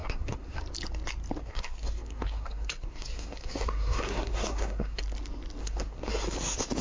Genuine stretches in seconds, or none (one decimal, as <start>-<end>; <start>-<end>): 0.6-1.4; 5.0-5.6; 6.1-6.8